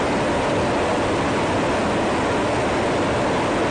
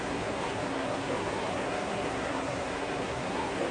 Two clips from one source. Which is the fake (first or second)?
second